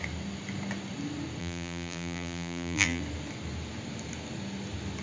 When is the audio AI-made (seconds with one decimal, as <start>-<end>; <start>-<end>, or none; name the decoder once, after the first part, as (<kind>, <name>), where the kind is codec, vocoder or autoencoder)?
1.4-3.0 (vocoder, BigVGAN v2)